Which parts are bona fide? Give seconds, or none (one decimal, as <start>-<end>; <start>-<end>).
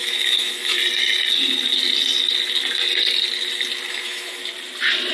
0.8-3.9; 4.4-5.1